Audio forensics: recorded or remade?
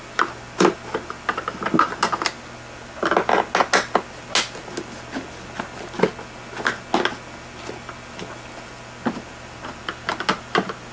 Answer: recorded